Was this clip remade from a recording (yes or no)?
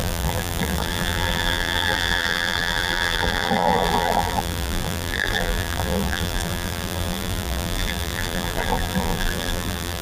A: yes